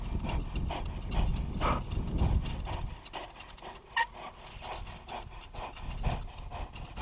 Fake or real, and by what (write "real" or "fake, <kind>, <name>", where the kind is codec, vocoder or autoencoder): real